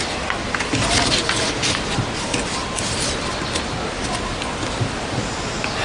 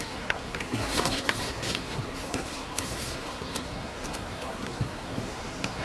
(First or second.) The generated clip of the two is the second